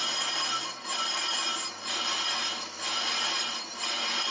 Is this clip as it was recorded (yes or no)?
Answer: yes